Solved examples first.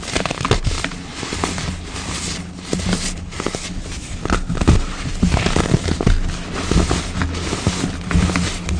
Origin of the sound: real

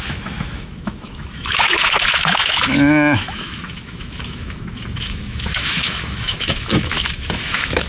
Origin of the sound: fake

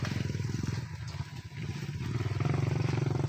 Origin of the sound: real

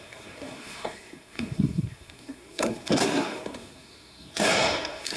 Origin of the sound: fake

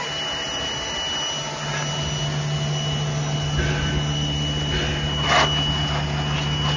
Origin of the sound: real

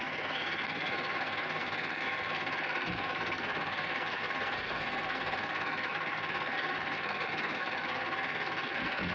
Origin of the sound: fake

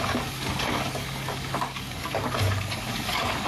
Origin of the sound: fake